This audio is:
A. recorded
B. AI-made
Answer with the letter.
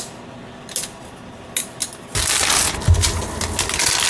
A